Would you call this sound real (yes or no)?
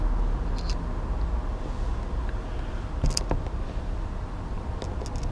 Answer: yes